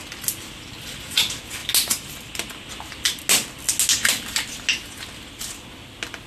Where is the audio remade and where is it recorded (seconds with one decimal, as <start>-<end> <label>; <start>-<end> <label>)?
0.0-6.3 recorded